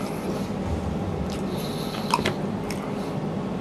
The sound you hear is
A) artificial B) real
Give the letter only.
B